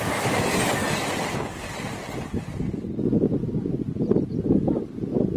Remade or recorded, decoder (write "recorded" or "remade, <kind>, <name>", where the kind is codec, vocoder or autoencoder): recorded